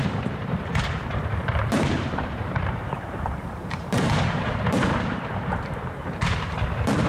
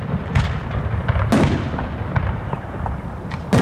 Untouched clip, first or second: second